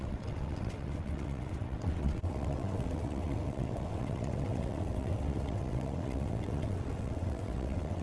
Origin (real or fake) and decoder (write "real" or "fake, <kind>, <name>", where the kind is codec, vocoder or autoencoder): fake, vocoder, WaveNeXt